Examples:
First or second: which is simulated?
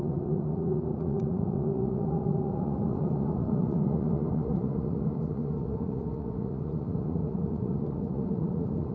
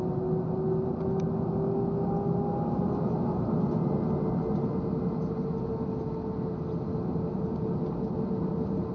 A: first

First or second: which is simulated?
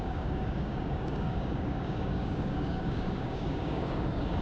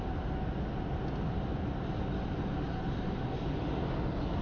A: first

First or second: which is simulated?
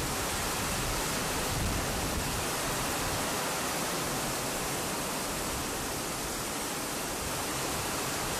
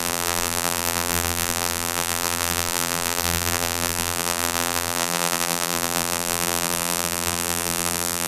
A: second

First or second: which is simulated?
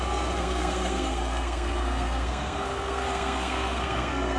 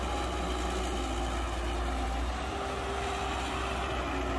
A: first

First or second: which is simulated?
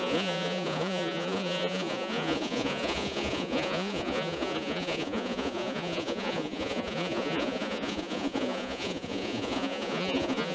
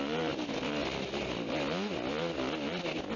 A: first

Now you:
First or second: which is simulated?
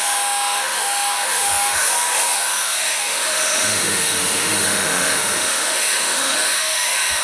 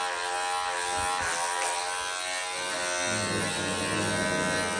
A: first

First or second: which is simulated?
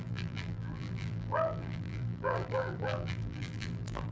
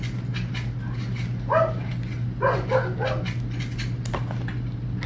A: first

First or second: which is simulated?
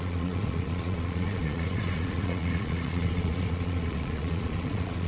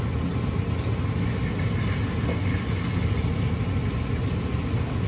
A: first